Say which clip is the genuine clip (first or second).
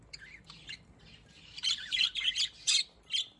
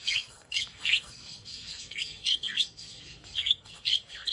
first